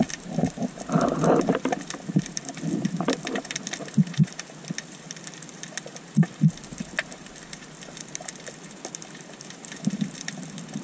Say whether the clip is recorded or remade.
remade